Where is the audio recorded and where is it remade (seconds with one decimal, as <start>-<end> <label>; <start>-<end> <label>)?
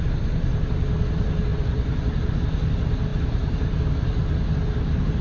0.0-1.5 recorded; 1.5-2.1 remade; 2.1-5.2 recorded